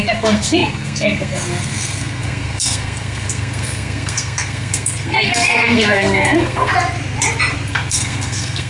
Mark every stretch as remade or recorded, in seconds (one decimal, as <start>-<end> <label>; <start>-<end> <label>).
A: 0.0-6.7 remade; 6.7-7.7 recorded; 7.7-8.7 remade